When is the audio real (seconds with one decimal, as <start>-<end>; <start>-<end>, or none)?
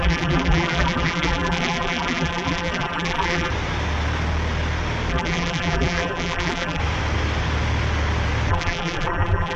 3.5-5.1; 6.8-8.5